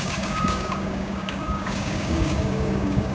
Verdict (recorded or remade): remade